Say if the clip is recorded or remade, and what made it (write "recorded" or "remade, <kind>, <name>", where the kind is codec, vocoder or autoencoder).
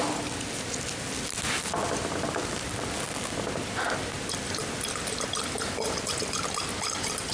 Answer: recorded